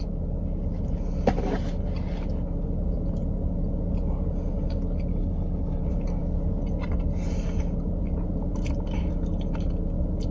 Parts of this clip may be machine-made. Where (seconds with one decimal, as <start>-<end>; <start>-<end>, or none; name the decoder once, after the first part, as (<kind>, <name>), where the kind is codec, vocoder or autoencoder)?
5.1-5.8 (codec, HILCodec)

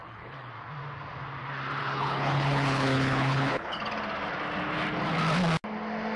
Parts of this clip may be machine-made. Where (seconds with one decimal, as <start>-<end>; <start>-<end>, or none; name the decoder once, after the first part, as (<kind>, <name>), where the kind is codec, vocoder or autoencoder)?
0.0-0.5 (codec, HILCodec); 1.8-3.8

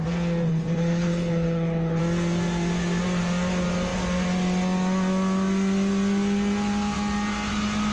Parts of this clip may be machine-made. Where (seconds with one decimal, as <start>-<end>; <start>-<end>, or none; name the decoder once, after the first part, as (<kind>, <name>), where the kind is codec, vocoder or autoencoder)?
0.5-2.0 (codec, HILCodec)